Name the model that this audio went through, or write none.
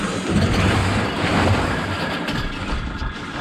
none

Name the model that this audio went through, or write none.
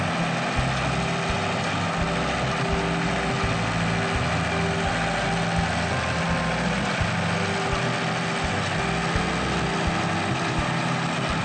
none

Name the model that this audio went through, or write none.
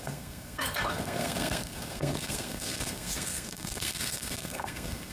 codec, SNAC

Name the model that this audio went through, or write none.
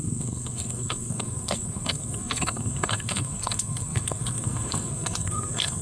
codec, SNAC